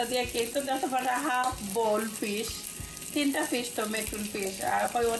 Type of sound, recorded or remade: recorded